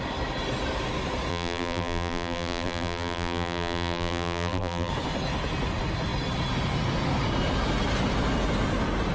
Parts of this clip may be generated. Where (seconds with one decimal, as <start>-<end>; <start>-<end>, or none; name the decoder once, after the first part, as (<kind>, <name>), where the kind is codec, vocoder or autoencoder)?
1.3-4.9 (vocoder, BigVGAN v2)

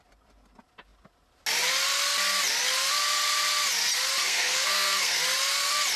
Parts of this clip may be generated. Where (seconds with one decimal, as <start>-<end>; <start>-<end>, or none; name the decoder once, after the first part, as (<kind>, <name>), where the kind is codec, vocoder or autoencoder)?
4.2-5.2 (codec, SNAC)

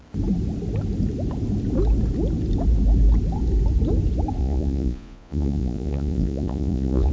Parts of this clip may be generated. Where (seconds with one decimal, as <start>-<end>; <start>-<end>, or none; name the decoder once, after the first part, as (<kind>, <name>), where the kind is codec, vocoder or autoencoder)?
4.4-7.1 (vocoder, Vocos)

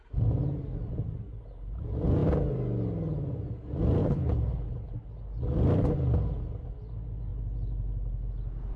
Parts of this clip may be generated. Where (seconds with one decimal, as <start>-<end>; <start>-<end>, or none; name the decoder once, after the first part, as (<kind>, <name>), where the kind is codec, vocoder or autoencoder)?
4.0-4.9 (codec, HILCodec)

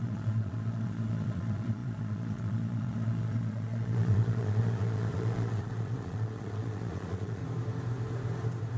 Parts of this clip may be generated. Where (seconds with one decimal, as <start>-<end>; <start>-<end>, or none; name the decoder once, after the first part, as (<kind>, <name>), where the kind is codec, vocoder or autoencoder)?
0.0-7.4 (vocoder, Vocos)